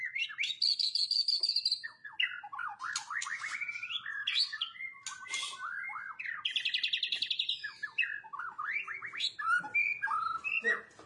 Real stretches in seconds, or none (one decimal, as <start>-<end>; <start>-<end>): 0.0-11.1